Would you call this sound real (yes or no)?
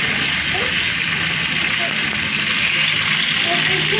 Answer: yes